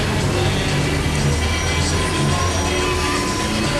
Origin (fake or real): real